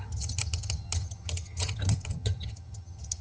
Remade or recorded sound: remade